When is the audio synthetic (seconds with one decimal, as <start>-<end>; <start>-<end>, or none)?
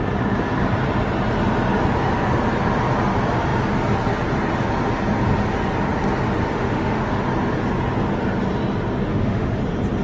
6.5-7.2; 9.1-9.6